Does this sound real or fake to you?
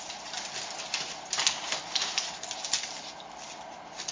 real